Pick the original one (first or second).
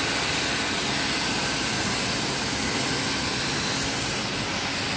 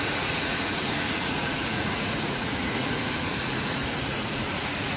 first